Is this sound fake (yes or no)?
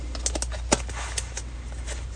no